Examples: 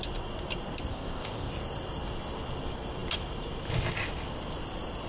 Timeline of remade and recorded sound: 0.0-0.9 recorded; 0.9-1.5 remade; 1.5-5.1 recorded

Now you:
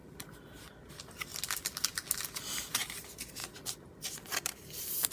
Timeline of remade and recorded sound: 0.0-1.3 remade; 1.3-2.6 recorded; 2.6-3.4 remade; 3.4-4.0 recorded; 4.0-5.1 remade

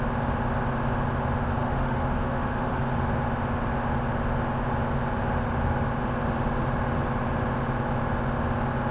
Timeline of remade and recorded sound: 0.0-1.6 recorded; 1.6-2.8 remade; 2.8-8.9 recorded

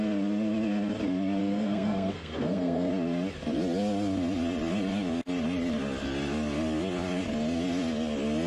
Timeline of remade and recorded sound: 0.0-1.4 recorded; 1.4-2.9 remade; 2.9-8.5 recorded

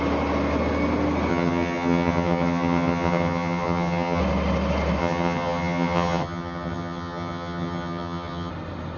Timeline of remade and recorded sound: 0.0-1.3 recorded; 1.3-4.2 remade; 4.2-5.0 recorded; 5.0-8.5 remade; 8.5-9.0 recorded